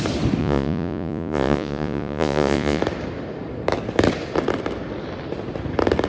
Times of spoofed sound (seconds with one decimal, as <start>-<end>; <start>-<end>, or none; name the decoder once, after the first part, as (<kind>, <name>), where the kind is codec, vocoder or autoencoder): 0.4-2.8 (vocoder, Vocos)